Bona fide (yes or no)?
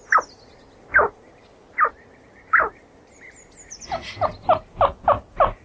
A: yes